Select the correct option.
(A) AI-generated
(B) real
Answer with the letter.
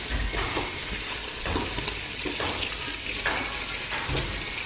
B